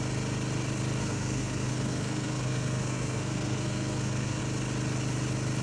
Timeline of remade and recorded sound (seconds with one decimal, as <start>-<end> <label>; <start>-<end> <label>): 0.0-1.0 recorded; 1.0-4.4 remade; 4.4-5.6 recorded